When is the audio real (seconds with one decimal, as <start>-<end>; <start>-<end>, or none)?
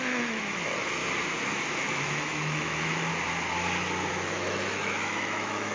1.0-1.8; 3.1-4.1